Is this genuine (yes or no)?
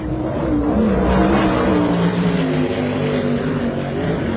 yes